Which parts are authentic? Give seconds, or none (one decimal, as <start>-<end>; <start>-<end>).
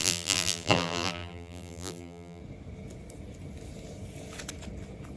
2.4-5.2